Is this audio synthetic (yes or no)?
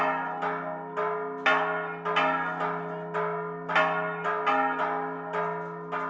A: no